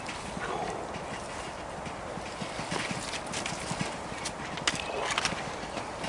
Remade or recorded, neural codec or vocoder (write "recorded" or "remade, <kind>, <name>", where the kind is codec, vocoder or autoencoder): recorded